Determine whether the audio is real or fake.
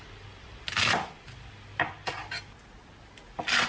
real